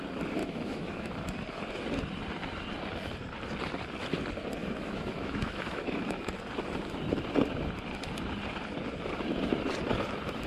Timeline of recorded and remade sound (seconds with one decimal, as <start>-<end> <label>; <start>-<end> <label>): 0.0-0.4 recorded; 0.4-1.1 remade; 1.1-4.6 recorded; 4.6-6.4 remade; 6.4-10.5 recorded